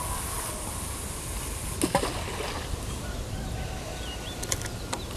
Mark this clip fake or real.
real